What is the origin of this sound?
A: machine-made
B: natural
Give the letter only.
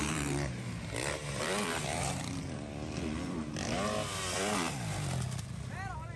B